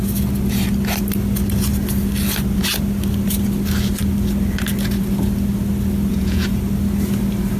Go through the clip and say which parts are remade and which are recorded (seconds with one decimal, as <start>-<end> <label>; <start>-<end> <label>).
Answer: 0.0-6.1 recorded; 6.1-6.6 remade; 6.6-7.6 recorded